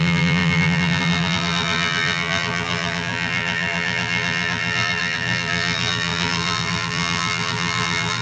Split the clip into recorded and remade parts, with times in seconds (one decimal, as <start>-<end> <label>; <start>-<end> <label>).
0.0-8.2 remade